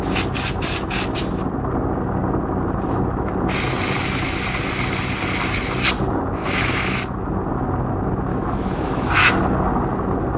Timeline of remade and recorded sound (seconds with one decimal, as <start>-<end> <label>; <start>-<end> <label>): 0.0-6.4 recorded; 6.4-7.0 remade; 7.0-8.3 recorded; 8.3-9.3 remade; 9.3-10.4 recorded